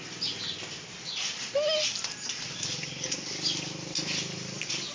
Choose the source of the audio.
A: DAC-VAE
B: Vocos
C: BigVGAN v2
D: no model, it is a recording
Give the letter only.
D